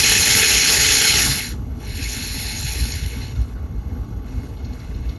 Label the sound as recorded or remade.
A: remade